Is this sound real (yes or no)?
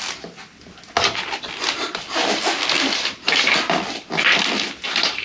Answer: yes